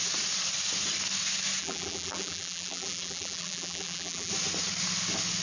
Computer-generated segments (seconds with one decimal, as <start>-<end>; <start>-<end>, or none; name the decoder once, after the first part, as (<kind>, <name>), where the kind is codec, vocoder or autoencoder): 1.6-4.3 (vocoder, BigVGAN v2)